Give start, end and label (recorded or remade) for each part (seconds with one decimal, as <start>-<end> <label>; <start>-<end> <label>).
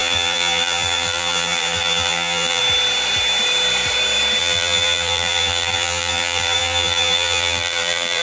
0.0-2.6 remade; 2.6-4.4 recorded; 4.4-8.2 remade